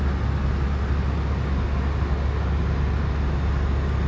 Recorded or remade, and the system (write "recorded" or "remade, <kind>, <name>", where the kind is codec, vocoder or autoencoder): recorded